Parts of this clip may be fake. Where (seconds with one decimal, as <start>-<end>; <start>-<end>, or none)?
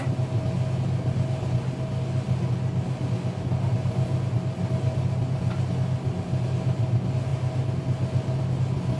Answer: none